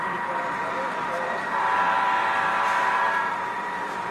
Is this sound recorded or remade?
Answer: remade